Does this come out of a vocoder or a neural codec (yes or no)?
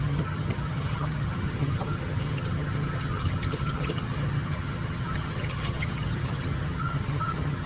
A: yes